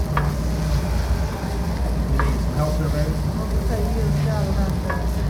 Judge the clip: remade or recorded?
recorded